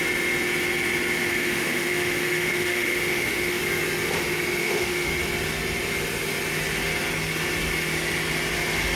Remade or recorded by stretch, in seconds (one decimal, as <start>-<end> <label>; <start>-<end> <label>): 0.0-1.3 recorded; 1.3-3.6 remade; 3.6-4.6 recorded; 4.6-5.1 remade; 5.1-9.0 recorded